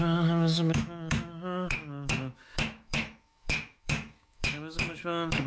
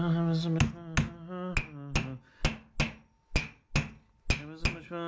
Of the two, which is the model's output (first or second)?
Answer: first